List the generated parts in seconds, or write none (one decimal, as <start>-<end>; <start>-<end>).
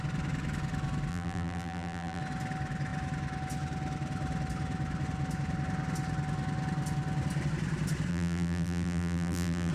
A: 1.1-2.2; 8.1-9.7